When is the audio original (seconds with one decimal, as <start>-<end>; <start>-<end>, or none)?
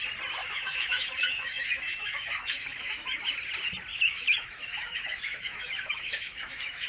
0.0-0.4; 3.2-3.9